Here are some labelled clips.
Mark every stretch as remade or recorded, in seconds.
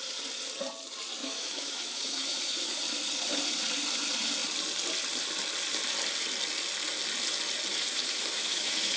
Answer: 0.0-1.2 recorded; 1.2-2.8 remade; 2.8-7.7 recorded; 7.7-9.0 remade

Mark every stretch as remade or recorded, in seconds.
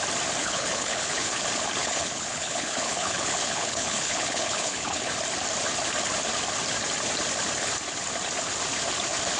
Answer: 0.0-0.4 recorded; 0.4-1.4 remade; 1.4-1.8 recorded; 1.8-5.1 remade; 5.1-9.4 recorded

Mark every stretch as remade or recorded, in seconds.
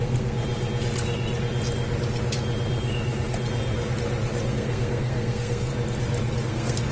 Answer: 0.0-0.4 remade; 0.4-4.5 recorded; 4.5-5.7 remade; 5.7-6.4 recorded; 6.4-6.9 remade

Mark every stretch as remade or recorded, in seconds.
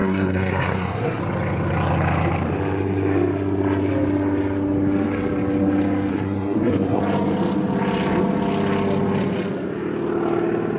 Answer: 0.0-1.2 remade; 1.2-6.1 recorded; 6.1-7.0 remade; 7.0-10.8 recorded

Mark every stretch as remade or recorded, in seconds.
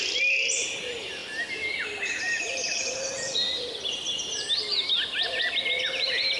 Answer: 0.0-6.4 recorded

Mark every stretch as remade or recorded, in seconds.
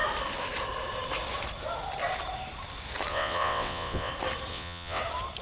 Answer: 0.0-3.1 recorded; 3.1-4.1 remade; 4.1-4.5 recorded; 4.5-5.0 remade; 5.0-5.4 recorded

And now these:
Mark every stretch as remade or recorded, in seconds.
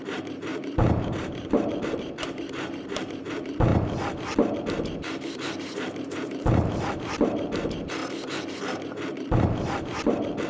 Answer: 0.0-3.7 remade; 3.7-4.6 recorded; 4.6-8.0 remade; 8.0-8.6 recorded; 8.6-10.5 remade